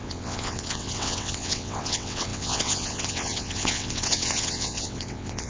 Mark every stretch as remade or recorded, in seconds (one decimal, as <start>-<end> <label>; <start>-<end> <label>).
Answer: 0.0-5.5 remade